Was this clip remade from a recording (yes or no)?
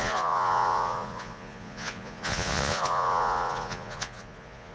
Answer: yes